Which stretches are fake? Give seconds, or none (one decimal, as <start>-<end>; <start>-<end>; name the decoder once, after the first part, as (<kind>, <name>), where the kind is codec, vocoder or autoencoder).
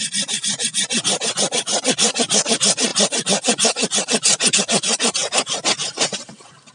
0.0-6.7 (vocoder, BigVGAN v2)